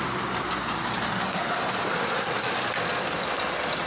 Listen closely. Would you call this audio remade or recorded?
recorded